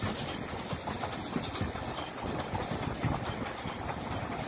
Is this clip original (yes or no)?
yes